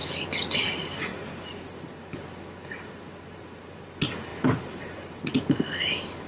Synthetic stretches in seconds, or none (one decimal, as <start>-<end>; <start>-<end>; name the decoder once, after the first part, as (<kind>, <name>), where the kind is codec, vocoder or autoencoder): none